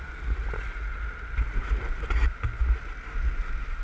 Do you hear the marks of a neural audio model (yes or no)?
no